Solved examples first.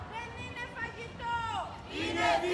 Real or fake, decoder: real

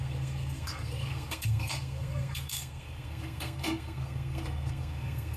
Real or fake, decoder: fake, codec, SNAC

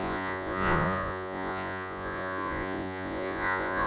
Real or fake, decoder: fake, vocoder, Vocos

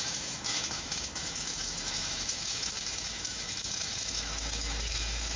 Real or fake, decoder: fake, autoencoder, DAC-VAE